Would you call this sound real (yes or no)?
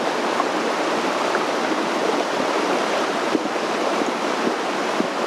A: yes